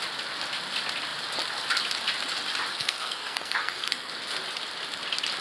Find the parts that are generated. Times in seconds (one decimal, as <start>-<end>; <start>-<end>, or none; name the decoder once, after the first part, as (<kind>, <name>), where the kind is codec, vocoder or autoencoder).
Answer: 2.7-4.1 (codec, SNAC)